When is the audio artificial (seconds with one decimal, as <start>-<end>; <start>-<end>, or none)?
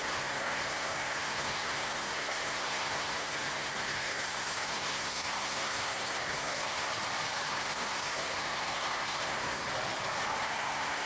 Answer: 0.0-6.9; 7.5-9.6; 10.4-11.1